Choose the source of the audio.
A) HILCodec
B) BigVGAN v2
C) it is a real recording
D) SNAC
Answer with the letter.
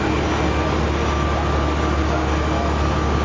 C